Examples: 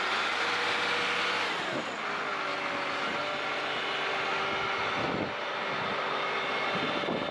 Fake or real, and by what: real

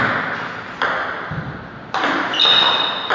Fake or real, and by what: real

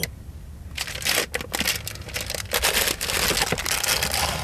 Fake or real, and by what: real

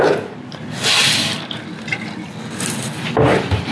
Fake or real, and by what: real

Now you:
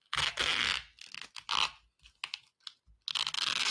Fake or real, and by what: real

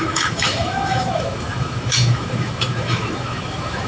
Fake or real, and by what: fake, autoencoder, DAC-VAE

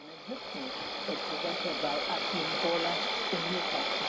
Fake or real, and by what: real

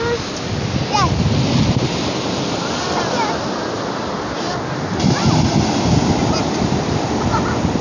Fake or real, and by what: real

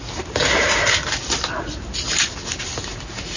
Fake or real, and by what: real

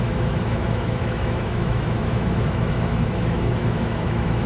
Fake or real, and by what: fake, autoencoder, DAC-VAE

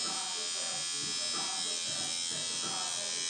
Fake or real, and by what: real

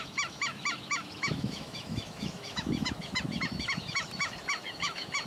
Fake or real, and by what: fake, autoencoder, DAC-VAE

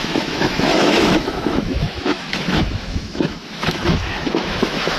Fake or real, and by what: fake, autoencoder, DAC-VAE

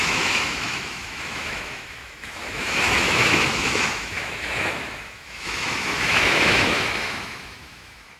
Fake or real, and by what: fake, autoencoder, DAC-VAE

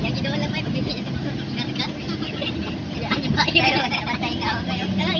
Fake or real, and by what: real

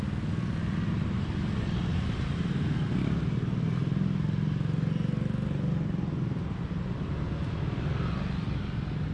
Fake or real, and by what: real